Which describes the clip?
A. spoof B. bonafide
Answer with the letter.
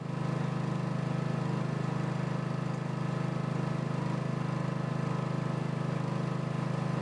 B